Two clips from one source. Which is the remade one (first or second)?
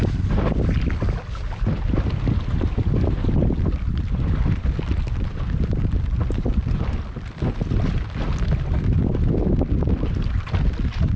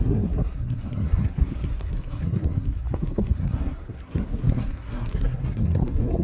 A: second